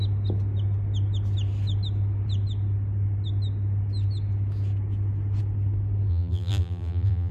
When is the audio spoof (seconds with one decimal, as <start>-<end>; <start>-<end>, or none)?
6.1-7.3